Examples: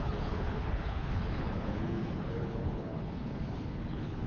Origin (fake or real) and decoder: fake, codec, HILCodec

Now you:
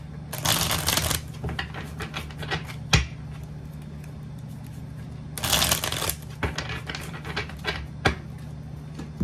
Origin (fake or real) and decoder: real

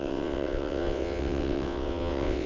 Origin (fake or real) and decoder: fake, vocoder, WaveNeXt